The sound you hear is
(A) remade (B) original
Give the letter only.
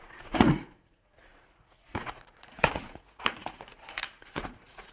A